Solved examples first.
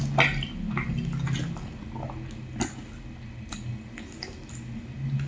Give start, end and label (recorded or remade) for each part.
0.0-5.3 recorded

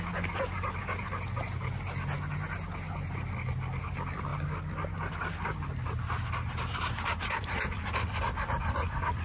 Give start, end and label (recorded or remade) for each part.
0.0-9.2 recorded